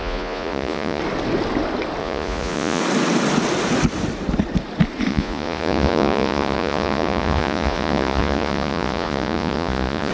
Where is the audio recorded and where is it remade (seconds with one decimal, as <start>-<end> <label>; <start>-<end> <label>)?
0.0-1.0 remade; 1.0-2.0 recorded; 2.0-2.8 remade; 2.8-5.1 recorded; 5.1-10.1 remade